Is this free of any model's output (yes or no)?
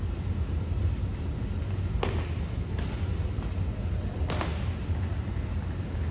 yes